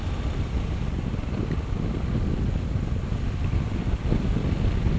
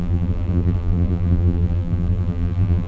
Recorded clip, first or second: first